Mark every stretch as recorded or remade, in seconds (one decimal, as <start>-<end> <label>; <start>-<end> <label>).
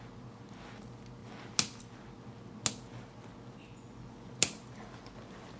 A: 0.0-3.7 recorded; 3.7-4.3 remade; 4.3-5.6 recorded